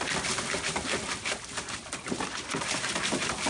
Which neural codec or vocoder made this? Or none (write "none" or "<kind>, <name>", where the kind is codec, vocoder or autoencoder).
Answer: none